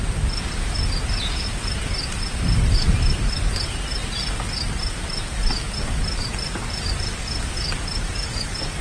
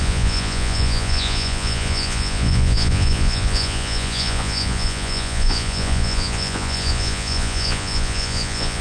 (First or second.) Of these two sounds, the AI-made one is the second